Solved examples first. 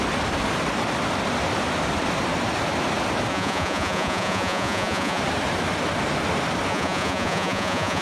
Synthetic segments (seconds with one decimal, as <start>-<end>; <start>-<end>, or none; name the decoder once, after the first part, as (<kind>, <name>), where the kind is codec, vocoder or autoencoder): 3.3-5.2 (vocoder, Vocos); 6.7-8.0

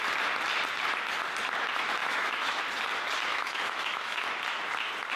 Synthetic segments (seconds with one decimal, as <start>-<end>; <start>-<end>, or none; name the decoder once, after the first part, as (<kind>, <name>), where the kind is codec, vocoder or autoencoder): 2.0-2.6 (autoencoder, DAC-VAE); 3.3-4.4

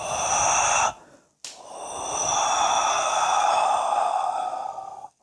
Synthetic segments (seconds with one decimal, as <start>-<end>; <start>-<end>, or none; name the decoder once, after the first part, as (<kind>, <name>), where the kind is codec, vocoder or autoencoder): 2.9-3.5 (codec, SNAC); 4.1-5.2